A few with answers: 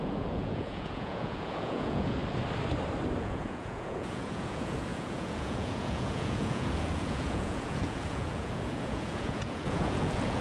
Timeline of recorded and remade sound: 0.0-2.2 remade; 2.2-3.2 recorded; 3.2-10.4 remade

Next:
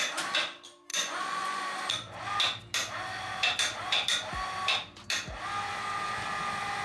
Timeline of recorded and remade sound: 0.0-0.9 recorded; 0.9-1.6 remade; 1.6-6.8 recorded

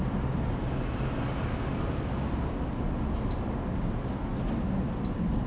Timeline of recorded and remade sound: 0.0-5.5 recorded